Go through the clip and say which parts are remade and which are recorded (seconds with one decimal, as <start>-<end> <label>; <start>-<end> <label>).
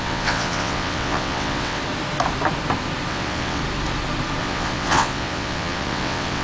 0.0-1.8 remade; 1.8-3.1 recorded; 3.1-3.6 remade; 3.6-4.4 recorded; 4.4-6.4 remade